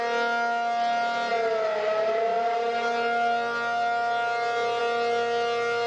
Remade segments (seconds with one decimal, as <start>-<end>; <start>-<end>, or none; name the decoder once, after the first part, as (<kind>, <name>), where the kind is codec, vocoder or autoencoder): none

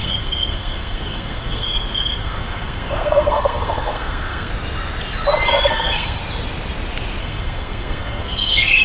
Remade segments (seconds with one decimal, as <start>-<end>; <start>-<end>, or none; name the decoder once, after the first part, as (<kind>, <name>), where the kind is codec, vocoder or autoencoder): 0.0-4.5 (codec, SNAC); 5.7-6.2; 7.2-8.8

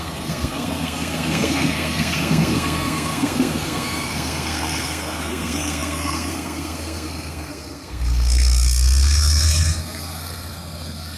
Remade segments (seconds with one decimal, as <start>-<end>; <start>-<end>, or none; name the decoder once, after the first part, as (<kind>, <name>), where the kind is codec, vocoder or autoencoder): 0.0-11.2 (codec, SNAC)